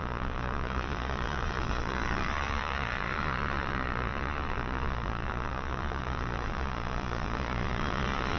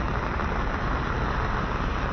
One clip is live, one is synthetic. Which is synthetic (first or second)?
first